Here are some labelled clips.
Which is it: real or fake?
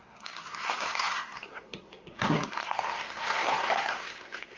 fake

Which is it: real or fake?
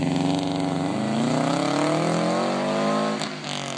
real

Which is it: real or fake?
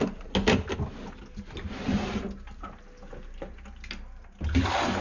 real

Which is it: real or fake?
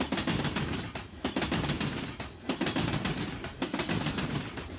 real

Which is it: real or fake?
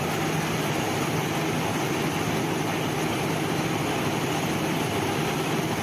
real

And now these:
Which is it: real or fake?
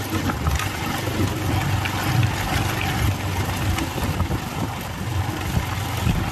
real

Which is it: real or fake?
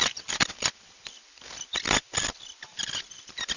real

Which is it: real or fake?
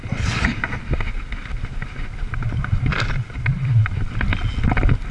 real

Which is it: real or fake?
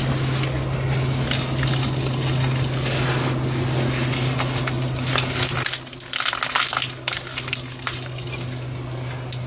real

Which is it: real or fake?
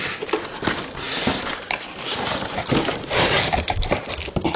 real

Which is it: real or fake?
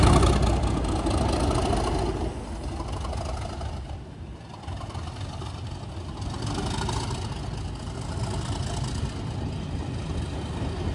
real